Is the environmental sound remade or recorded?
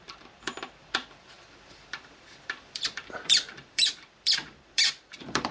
remade